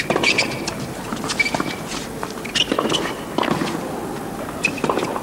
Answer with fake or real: real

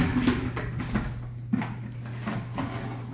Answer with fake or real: real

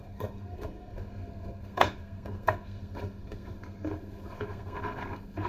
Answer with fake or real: fake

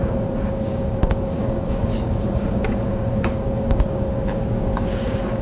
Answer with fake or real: fake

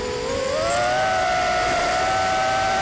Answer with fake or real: real